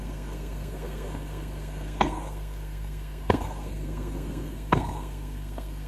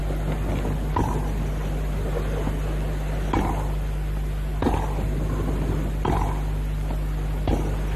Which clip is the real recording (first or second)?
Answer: second